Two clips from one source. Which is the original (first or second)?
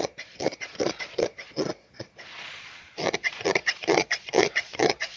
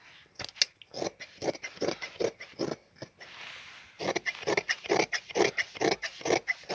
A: second